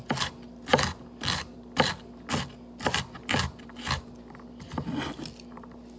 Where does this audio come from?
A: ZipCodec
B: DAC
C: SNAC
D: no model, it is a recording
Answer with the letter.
D